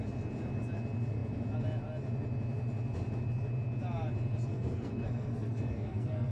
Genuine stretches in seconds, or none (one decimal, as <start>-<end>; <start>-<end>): 0.0-4.5